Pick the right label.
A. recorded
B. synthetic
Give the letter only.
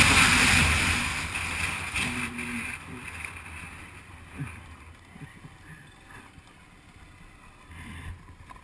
A